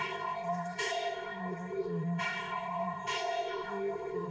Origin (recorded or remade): remade